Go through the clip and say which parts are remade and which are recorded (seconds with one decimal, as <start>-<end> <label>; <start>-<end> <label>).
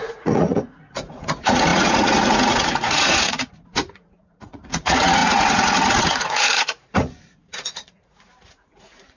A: 0.0-9.2 remade